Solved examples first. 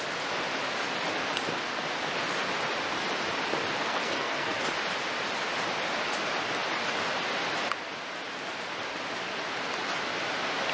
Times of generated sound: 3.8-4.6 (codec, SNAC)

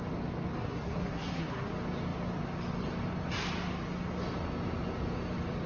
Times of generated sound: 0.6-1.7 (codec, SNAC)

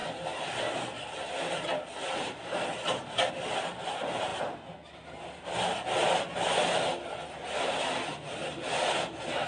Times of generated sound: none

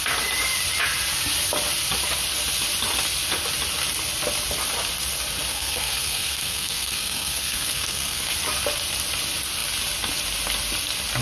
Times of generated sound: 5.5-8.2 (codec, SNAC)

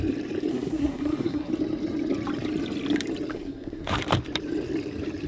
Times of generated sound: 0.5-1.5 (codec, SNAC); 3.3-3.9